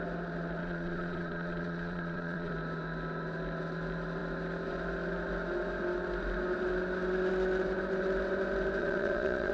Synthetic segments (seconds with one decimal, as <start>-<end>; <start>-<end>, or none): 0.6-2.5; 8.8-9.5